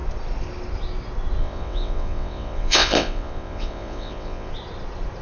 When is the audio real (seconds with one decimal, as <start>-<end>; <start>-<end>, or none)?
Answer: 0.0-1.4; 4.5-5.2